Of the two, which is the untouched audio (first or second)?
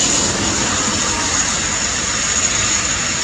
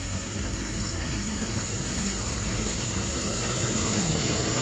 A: first